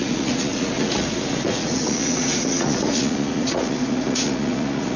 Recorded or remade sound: remade